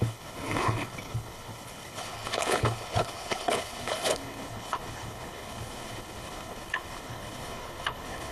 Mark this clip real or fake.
fake